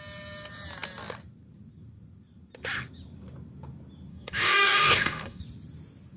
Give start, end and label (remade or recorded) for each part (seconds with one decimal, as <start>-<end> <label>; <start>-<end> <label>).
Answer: 0.0-4.1 recorded; 4.1-5.4 remade; 5.4-6.2 recorded